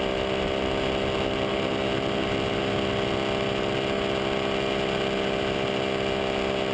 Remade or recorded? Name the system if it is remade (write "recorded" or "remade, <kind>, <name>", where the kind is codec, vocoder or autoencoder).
recorded